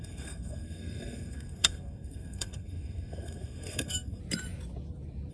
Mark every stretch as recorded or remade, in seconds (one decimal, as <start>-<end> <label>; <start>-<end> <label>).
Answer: 0.0-4.2 remade; 4.2-5.3 recorded

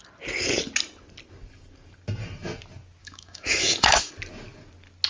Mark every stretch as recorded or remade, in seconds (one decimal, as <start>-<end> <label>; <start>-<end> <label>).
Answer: 0.0-3.0 recorded; 3.0-4.1 remade; 4.1-5.1 recorded

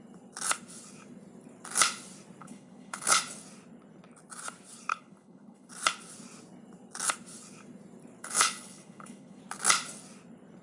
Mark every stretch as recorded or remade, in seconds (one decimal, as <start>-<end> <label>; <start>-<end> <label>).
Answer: 0.0-2.4 recorded; 2.4-3.2 remade; 3.2-4.9 recorded; 4.9-5.7 remade; 5.7-8.2 recorded; 8.2-9.4 remade; 9.4-10.6 recorded

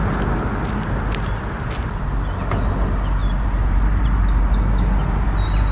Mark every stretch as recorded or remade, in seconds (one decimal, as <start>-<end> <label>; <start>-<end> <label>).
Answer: 0.0-3.2 recorded; 3.2-4.2 remade; 4.2-5.7 recorded